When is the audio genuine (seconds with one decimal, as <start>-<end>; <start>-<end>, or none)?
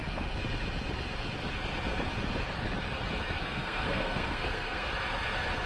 0.0-3.4; 4.9-5.7